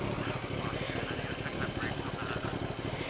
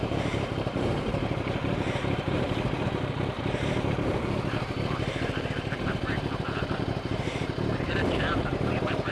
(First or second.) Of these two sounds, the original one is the first